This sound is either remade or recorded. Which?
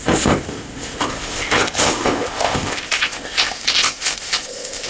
remade